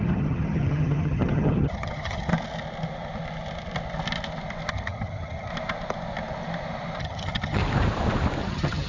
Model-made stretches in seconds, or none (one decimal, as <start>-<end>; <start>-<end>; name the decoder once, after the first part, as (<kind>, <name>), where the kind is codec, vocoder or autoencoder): 0.0-2.3 (vocoder, HiFi-GAN); 4.7-5.5; 7.0-7.6; 8.4-8.9